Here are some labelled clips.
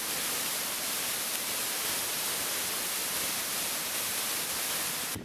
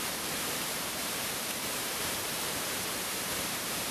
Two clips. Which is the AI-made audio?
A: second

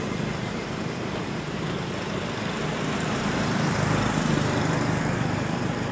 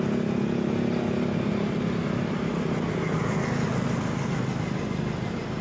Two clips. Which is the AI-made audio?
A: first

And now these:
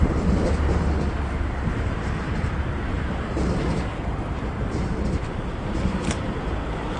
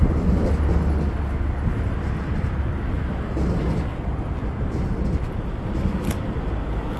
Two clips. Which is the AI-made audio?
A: first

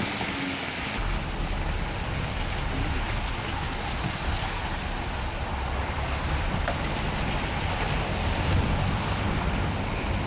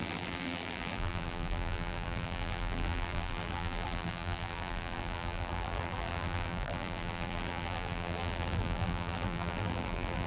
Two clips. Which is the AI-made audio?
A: second